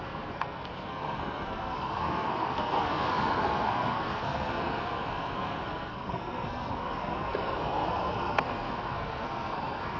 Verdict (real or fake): fake